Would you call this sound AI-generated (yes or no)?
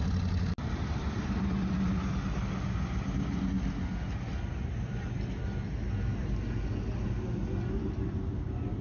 no